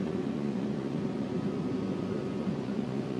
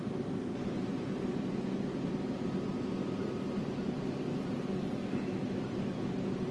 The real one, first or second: second